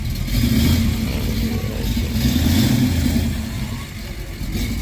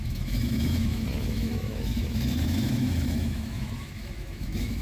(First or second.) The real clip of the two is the first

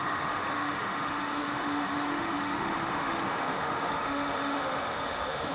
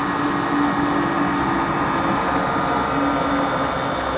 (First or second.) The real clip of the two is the second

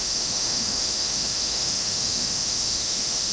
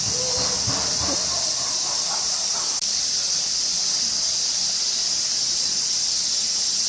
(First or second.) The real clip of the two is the second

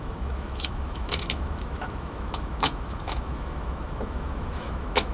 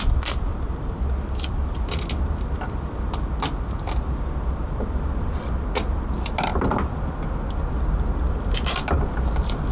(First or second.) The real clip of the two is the second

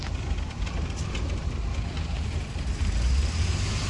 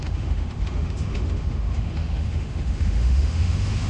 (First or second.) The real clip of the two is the first